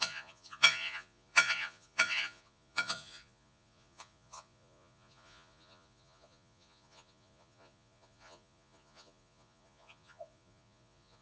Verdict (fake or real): fake